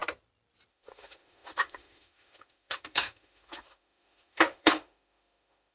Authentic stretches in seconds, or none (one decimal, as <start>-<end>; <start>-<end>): 0.0-0.7